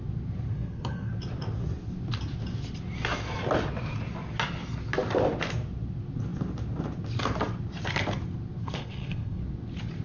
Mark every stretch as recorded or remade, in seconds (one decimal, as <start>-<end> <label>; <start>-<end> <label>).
0.0-0.5 recorded; 0.5-1.1 remade; 1.1-8.6 recorded; 8.6-9.4 remade; 9.4-10.0 recorded

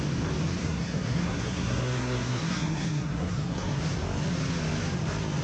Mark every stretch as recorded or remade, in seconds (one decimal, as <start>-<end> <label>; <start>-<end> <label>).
0.0-0.6 recorded; 0.6-3.8 remade; 3.8-5.4 recorded